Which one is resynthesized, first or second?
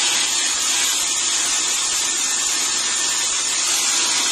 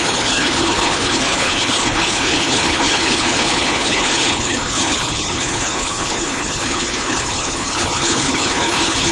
second